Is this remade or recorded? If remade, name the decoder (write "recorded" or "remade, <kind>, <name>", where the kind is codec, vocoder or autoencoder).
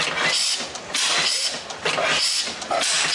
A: recorded